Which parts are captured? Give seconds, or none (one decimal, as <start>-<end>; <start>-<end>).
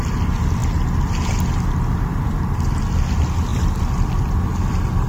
0.0-5.1